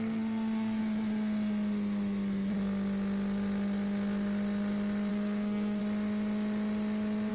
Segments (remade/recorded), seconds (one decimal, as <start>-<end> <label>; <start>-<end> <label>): 0.0-0.8 remade; 0.8-5.1 recorded; 5.1-5.8 remade; 5.8-7.3 recorded